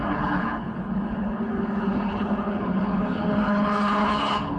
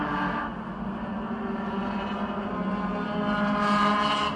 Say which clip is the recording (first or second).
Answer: second